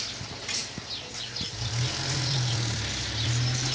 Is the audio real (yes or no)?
no